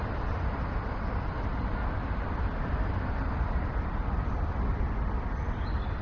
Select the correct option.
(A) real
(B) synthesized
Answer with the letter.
A